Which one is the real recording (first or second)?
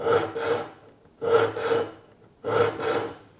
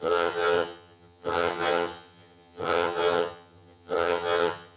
first